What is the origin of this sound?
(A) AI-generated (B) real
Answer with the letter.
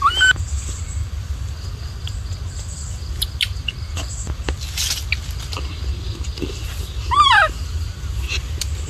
B